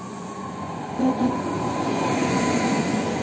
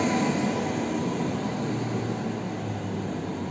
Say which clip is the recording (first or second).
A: second